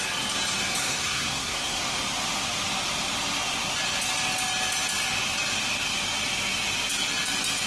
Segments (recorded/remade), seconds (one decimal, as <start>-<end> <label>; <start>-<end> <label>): 0.0-0.8 recorded; 0.8-1.8 remade; 1.8-7.7 recorded